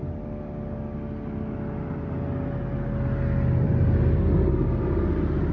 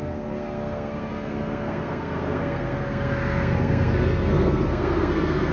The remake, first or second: second